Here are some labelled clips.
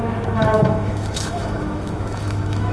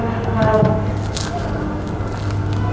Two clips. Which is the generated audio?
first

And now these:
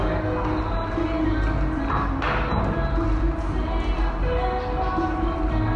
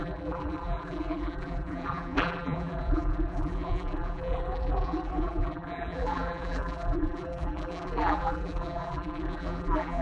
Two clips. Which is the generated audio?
second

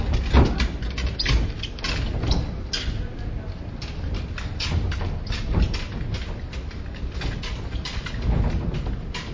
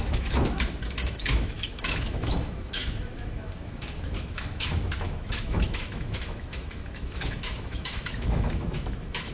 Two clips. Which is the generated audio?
second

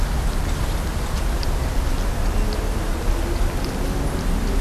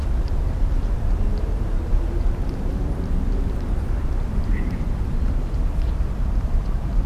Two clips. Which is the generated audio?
second